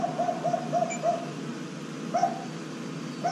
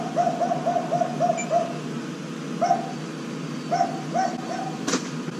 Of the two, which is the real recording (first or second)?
second